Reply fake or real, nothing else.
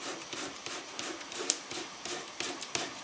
fake